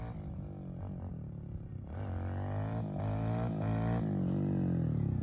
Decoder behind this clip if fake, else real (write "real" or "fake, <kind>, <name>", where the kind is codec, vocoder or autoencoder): real